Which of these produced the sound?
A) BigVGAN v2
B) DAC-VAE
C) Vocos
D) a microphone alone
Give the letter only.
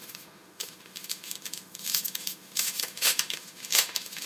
B